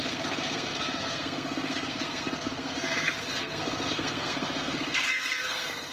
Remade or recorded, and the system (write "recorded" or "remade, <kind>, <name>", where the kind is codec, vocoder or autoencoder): remade, codec, SNAC